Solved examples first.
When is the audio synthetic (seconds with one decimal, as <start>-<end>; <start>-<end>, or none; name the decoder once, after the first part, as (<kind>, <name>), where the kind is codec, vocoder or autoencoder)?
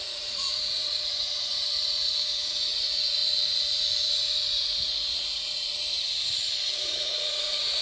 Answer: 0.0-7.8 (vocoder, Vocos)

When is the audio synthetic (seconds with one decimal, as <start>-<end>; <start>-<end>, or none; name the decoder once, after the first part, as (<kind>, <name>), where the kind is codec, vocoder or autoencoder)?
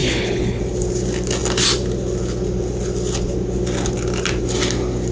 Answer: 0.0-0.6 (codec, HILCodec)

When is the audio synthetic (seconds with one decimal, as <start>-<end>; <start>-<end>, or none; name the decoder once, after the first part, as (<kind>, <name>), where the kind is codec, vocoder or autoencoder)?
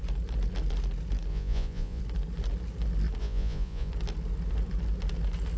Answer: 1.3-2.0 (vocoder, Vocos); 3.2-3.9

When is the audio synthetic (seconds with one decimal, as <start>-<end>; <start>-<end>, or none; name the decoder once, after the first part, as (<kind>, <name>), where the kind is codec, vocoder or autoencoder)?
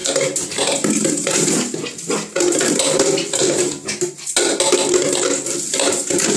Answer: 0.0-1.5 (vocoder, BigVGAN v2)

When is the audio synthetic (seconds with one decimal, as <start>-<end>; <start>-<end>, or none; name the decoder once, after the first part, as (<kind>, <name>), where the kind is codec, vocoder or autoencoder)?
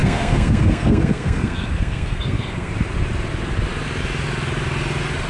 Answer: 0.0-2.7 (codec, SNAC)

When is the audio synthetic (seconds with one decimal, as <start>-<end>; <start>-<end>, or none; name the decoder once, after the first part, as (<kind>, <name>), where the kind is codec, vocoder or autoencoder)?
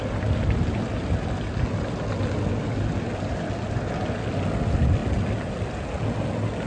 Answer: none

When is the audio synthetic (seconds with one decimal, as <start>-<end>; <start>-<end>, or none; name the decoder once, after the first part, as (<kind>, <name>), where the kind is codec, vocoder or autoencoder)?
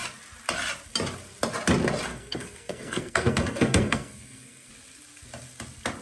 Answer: 2.1-4.7 (codec, SNAC)